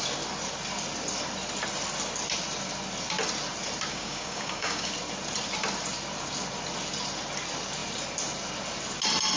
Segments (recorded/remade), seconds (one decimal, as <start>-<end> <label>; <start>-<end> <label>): 0.0-3.9 recorded; 3.9-4.9 remade; 4.9-9.4 recorded

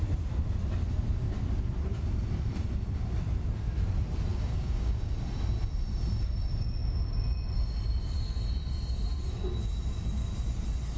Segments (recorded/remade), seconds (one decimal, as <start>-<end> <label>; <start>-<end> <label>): 0.0-4.3 recorded; 4.3-5.1 remade; 5.1-11.0 recorded

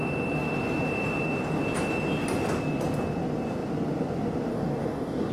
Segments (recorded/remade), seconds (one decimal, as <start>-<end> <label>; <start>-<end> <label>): 0.0-4.5 recorded; 4.5-5.3 remade

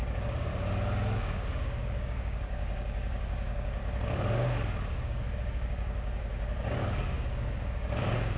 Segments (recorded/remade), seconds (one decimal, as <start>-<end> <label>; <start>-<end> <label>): 0.0-0.5 remade; 0.5-1.2 recorded; 1.2-3.8 remade; 3.8-4.9 recorded; 4.9-8.4 remade